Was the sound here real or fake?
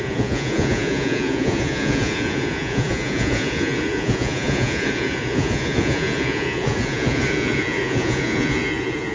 fake